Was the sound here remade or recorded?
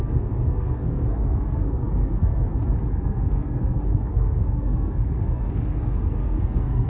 remade